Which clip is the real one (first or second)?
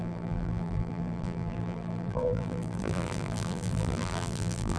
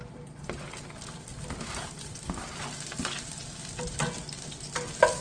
second